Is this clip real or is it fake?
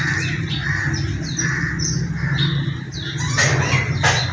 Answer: real